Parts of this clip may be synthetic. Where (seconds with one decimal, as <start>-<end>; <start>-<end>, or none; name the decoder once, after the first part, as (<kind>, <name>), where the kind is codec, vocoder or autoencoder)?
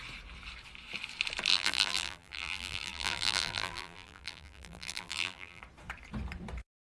1.5-5.6 (vocoder, BigVGAN v2)